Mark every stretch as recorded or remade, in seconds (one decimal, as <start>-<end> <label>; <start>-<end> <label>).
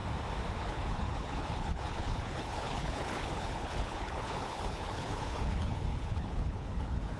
0.0-0.6 recorded; 0.6-7.2 remade